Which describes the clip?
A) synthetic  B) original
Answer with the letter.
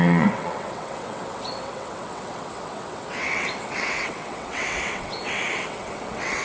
A